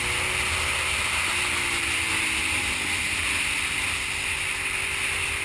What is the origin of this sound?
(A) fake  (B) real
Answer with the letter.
B